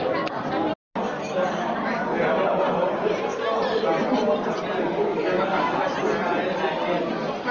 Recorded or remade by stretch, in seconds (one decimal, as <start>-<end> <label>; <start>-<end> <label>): 0.0-5.0 recorded; 5.0-5.8 remade; 5.8-7.5 recorded